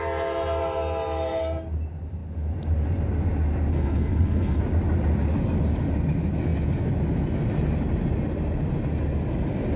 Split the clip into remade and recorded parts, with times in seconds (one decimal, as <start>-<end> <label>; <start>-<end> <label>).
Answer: 0.0-3.7 recorded; 3.7-4.6 remade; 4.6-9.8 recorded